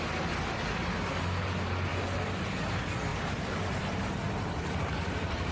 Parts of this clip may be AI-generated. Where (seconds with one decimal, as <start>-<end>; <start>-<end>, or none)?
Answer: none